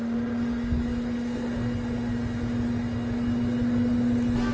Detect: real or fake real